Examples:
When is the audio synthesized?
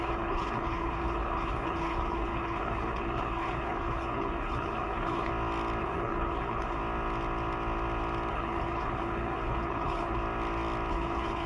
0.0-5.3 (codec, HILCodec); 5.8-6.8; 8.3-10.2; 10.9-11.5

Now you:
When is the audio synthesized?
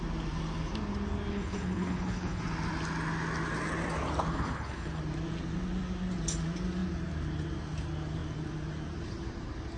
1.3-2.4 (codec, HILCodec); 4.3-5.0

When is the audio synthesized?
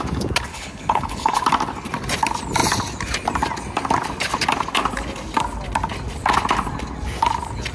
0.5-1.4 (codec, HILCodec)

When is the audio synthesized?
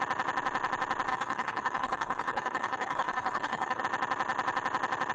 1.1-3.8 (codec, HILCodec)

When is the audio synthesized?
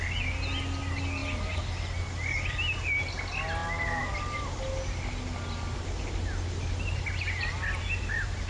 none